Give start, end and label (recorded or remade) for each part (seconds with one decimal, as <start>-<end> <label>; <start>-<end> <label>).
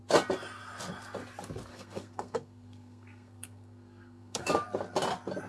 0.0-1.7 recorded; 1.7-4.5 remade; 4.5-5.5 recorded